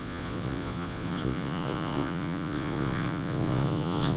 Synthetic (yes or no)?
yes